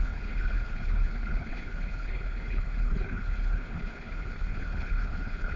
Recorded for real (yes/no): no